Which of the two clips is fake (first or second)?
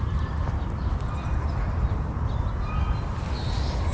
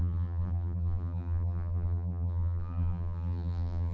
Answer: second